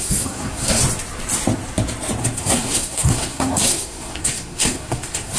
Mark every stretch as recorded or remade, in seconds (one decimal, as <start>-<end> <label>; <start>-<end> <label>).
0.0-0.8 remade; 0.8-2.2 recorded; 2.2-5.4 remade